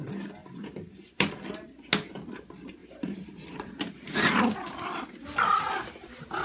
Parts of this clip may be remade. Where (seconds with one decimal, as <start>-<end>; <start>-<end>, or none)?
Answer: 0.4-1.3; 2.8-4.3